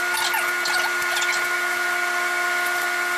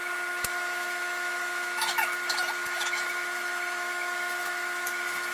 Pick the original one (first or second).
first